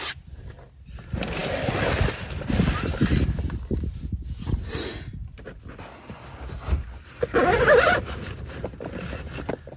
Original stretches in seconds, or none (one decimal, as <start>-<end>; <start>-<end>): 0.0-9.8